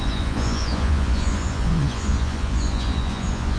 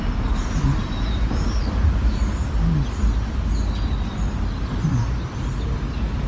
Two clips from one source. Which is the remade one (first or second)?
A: first